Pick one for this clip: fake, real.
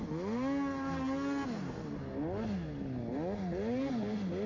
real